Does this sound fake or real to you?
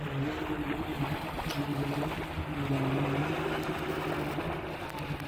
real